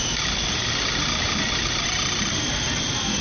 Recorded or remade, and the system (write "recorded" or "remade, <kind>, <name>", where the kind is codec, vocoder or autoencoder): recorded